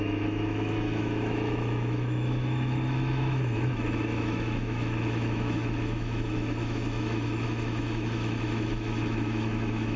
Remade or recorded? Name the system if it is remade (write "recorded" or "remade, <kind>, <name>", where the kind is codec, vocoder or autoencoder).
remade, autoencoder, DAC-VAE